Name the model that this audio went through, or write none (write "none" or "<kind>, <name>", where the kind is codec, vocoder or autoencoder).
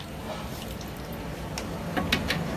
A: none